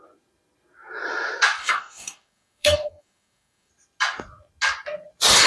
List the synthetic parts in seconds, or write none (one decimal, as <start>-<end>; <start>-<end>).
1.6-3.7